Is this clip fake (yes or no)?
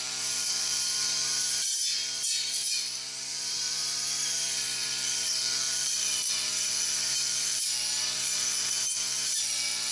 yes